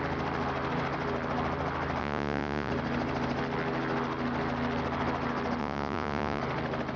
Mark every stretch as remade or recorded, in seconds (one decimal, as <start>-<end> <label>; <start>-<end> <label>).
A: 0.0-2.0 recorded; 2.0-2.7 remade; 2.7-5.6 recorded; 5.6-6.4 remade; 6.4-7.0 recorded